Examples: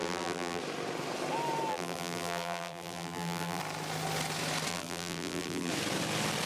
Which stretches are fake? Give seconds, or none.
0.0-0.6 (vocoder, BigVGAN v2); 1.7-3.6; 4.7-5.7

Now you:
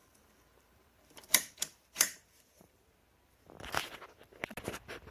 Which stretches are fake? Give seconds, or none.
0.0-2.8 (vocoder, BigVGAN v2)

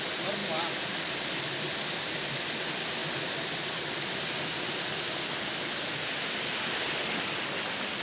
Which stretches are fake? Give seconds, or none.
0.4-1.3 (vocoder, BigVGAN v2)